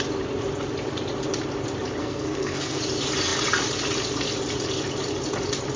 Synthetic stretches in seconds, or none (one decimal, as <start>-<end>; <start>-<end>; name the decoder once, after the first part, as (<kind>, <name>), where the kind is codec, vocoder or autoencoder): 2.0-2.8 (codec, SNAC)